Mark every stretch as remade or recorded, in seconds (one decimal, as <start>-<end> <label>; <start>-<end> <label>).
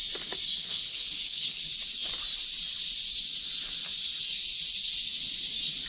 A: 0.0-0.6 recorded; 0.6-1.6 remade; 1.6-5.9 recorded